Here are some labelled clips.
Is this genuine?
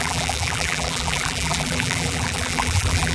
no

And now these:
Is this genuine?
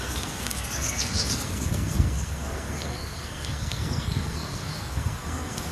no